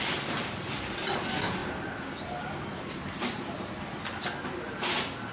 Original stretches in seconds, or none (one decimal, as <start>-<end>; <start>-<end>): 0.0-5.3